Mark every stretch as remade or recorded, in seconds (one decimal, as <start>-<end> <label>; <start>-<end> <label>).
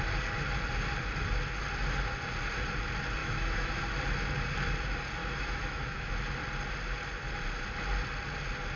0.0-3.2 recorded; 3.2-3.8 remade; 3.8-5.2 recorded; 5.2-6.1 remade; 6.1-8.8 recorded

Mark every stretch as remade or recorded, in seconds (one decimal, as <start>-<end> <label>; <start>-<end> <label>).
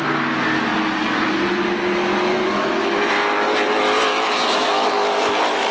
0.0-2.3 recorded; 2.3-3.1 remade; 3.1-4.1 recorded; 4.1-5.7 remade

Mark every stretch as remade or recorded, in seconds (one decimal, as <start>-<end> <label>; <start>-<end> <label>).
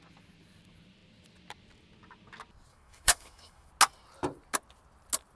0.0-2.7 recorded; 2.7-3.7 remade; 3.7-5.4 recorded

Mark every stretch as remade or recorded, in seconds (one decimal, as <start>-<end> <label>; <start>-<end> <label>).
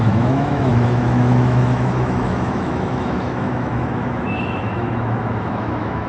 0.0-6.1 remade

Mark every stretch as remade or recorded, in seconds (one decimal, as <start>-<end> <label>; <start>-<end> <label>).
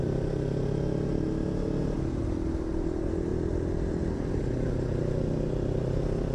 0.0-6.3 recorded